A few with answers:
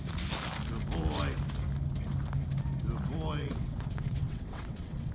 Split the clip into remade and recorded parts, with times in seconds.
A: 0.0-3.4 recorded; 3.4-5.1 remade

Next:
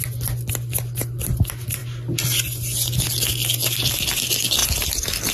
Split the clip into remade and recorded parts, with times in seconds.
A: 0.0-5.3 recorded

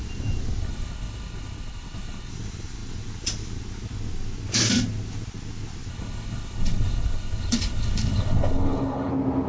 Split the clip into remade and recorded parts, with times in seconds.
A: 0.0-0.6 recorded; 0.6-2.3 remade; 2.3-5.9 recorded; 5.9-9.1 remade; 9.1-9.5 recorded

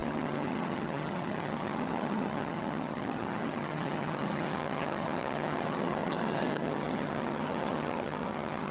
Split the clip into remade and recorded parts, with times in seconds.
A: 0.0-8.7 remade

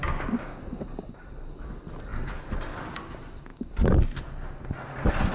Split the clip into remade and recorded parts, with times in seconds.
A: 0.0-0.6 remade; 0.6-5.3 recorded

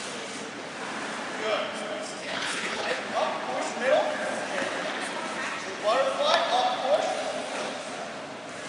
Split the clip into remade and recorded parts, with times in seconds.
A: 0.0-2.2 recorded; 2.2-3.0 remade; 3.0-8.7 recorded

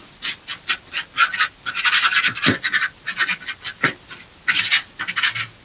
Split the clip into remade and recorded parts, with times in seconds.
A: 0.0-5.6 recorded